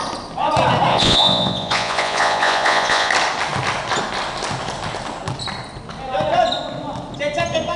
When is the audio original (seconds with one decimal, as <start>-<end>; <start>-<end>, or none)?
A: 0.0-0.9; 3.1-7.8